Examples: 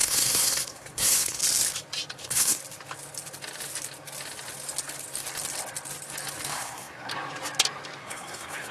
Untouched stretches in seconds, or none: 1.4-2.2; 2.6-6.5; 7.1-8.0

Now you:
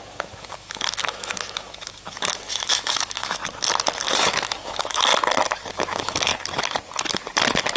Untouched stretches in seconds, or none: 3.4-4.0; 5.1-5.7; 6.3-7.8

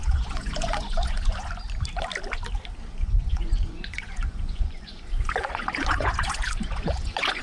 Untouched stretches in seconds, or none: 1.5-2.9

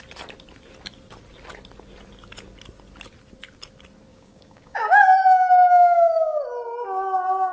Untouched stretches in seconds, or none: 0.0-4.1; 6.4-7.5